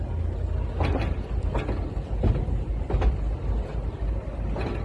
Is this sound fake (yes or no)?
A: no